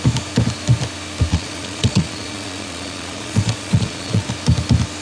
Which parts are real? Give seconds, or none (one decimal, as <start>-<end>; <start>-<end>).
0.0-1.3; 4.3-5.0